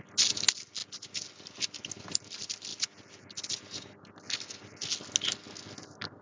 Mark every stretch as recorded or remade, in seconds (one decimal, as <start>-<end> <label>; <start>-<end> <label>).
0.0-6.2 recorded